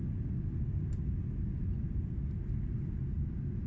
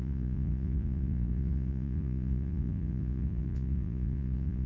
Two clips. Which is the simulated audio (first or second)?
second